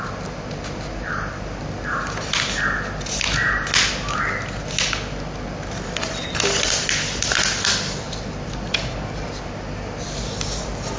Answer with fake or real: real